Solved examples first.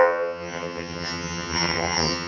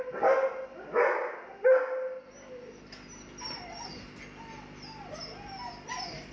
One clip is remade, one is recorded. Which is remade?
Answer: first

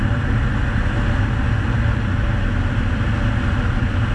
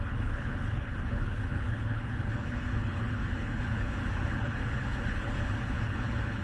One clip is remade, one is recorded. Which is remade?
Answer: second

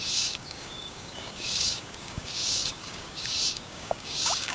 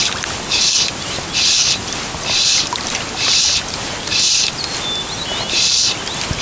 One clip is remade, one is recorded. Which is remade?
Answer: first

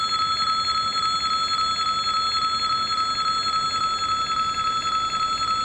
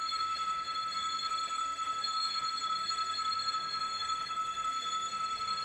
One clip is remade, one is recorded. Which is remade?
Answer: second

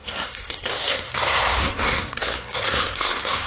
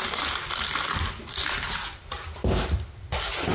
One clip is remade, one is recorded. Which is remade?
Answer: first